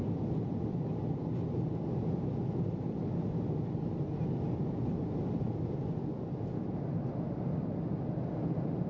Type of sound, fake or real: real